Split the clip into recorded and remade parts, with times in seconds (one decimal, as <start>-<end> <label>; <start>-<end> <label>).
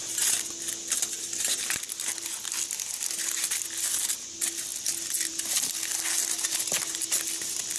0.0-7.8 recorded